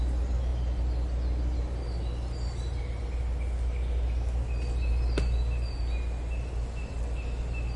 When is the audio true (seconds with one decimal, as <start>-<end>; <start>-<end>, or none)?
0.0-7.8